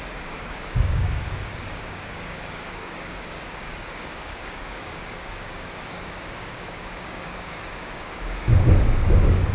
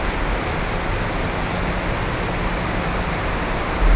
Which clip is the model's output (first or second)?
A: first